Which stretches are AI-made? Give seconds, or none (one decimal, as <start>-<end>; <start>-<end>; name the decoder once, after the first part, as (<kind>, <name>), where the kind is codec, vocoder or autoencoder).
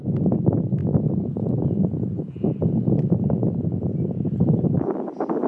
none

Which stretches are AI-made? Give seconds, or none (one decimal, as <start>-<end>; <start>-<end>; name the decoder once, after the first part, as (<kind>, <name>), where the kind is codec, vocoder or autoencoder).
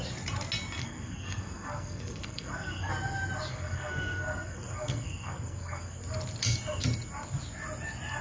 0.8-2.9 (codec, SNAC); 3.5-6.0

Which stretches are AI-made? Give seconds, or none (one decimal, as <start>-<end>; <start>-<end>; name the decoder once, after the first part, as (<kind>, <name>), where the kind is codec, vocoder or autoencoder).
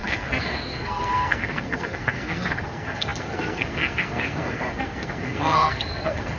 0.0-6.4 (codec, SNAC)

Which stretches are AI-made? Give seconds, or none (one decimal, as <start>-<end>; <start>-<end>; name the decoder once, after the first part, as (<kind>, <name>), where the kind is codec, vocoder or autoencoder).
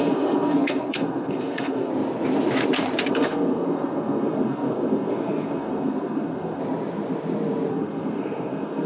0.0-1.9 (codec, SNAC); 3.1-6.6; 7.7-8.9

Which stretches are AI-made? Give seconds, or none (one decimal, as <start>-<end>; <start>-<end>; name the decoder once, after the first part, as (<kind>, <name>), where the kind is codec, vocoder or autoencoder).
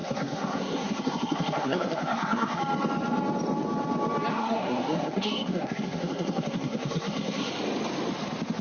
0.0-2.6 (codec, SNAC); 4.3-7.5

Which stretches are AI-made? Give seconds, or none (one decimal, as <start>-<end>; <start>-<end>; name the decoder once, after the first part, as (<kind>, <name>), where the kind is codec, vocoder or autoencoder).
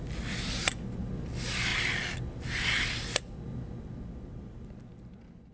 none